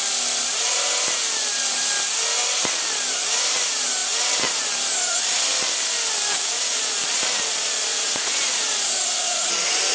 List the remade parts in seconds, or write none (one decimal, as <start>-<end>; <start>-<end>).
7.9-9.5